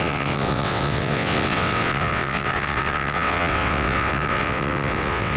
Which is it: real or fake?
fake